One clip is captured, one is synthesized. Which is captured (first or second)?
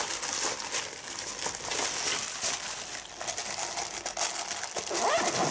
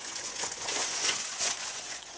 first